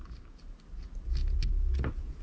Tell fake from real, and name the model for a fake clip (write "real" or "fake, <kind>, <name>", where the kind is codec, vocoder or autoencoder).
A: real